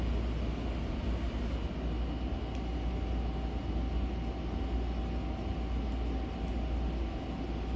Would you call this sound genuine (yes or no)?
yes